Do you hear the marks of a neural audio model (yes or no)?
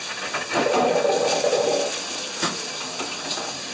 no